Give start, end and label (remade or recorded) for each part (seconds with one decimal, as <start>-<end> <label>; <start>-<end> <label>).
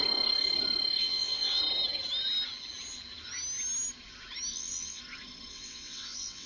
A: 0.0-1.0 recorded; 1.0-1.6 remade; 1.6-4.5 recorded; 4.5-5.0 remade; 5.0-5.5 recorded; 5.5-6.5 remade